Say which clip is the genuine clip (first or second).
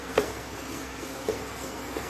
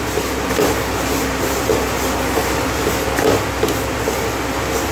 second